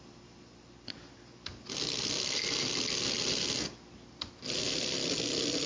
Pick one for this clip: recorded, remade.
recorded